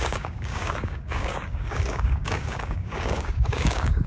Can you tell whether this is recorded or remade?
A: remade